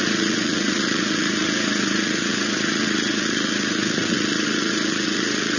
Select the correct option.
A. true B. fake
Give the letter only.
B